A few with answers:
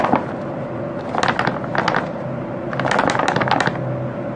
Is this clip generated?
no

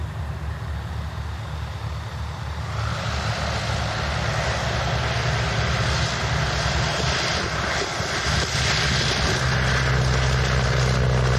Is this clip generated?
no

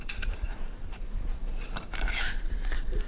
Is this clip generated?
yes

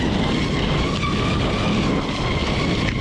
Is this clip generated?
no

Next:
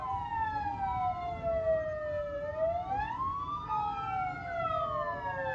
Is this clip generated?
no